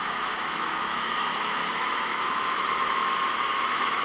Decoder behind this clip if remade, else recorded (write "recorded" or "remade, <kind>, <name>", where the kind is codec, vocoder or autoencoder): remade, autoencoder, DAC-VAE